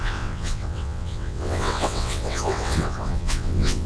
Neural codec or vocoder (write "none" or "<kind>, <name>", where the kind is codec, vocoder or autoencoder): vocoder, WaveNeXt